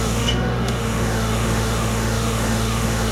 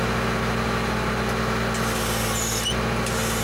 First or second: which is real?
second